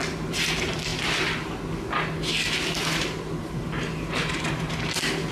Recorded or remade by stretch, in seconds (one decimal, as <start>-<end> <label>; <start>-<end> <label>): 0.0-5.3 recorded